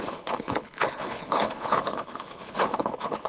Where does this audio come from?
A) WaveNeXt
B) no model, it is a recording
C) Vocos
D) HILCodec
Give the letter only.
D